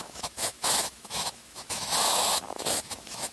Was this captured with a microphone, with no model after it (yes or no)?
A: no